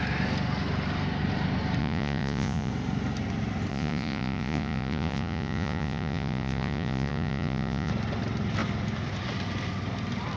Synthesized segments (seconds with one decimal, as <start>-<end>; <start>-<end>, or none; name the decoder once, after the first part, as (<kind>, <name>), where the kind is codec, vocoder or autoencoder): 1.8-2.7 (vocoder, Vocos); 3.7-7.9